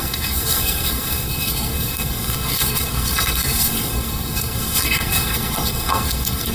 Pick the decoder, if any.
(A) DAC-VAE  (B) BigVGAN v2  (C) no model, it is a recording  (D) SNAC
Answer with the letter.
D